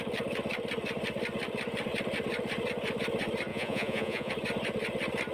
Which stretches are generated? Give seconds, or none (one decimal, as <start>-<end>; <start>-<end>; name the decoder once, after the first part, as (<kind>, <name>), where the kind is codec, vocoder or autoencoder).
3.5-4.3 (vocoder, Vocos)